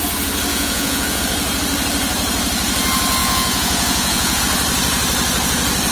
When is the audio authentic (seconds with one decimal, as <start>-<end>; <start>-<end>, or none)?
0.0-0.5; 1.2-3.2; 4.4-5.9